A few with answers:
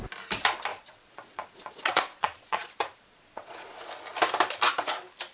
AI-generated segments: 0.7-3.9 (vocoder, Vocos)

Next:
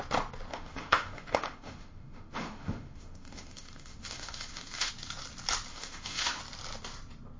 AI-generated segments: 0.5-4.9 (autoencoder, DAC-VAE); 5.7-6.4

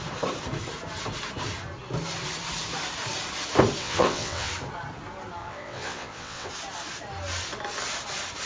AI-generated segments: 3.8-4.5 (vocoder, WaveNeXt); 5.4-6.5

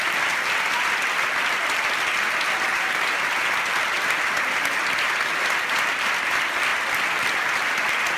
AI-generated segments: 2.7-3.3 (vocoder, BigVGAN v2)

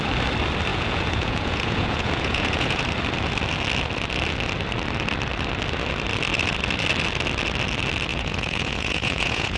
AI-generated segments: 0.7-2.8 (vocoder, Vocos); 8.1-9.6

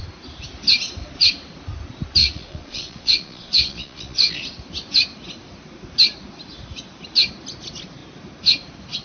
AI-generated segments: 2.2-4.4 (vocoder, Vocos)

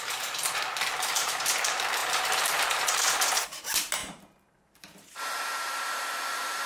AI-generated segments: 0.0-6.7 (vocoder, BigVGAN v2)